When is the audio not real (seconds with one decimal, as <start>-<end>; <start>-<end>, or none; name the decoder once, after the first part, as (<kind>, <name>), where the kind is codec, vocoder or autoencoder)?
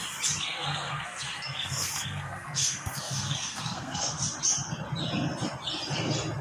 0.4-4.2 (codec, SNAC)